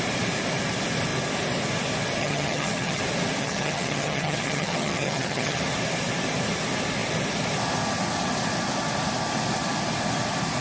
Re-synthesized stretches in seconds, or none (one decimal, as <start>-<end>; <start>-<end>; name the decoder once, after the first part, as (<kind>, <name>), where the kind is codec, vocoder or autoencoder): 2.2-3.0 (vocoder, HiFi-GAN); 3.4-5.6

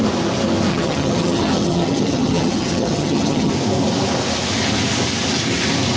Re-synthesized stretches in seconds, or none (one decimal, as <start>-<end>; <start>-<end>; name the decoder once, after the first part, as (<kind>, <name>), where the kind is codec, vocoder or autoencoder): 0.7-3.5 (vocoder, HiFi-GAN)

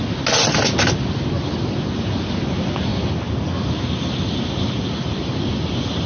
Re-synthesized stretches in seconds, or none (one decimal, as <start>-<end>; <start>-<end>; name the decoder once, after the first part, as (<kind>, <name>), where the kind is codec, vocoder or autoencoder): none

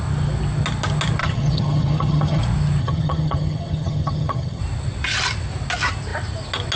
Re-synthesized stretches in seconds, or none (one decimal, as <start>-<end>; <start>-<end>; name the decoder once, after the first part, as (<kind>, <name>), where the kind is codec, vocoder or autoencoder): 1.2-2.4 (vocoder, HiFi-GAN); 2.8-4.6

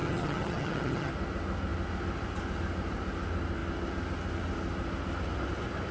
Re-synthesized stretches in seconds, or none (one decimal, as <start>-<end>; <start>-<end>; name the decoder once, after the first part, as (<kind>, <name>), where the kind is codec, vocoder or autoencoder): 0.0-1.1 (vocoder, HiFi-GAN)

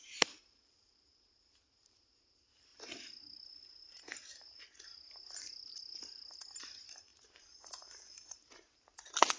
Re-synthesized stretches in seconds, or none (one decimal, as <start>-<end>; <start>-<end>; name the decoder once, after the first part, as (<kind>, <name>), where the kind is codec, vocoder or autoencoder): none

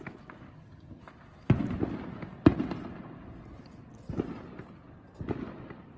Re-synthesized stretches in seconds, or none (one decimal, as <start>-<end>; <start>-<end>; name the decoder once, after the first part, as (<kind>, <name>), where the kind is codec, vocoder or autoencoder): 0.5-1.0 (vocoder, HiFi-GAN)